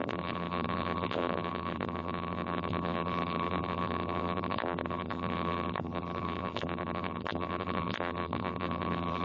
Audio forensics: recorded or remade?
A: remade